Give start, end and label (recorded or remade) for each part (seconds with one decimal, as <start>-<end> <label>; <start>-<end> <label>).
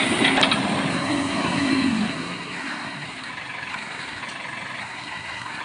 0.0-0.9 recorded; 0.9-3.3 remade; 3.3-3.7 recorded; 3.7-4.2 remade; 4.2-4.8 recorded; 4.8-5.6 remade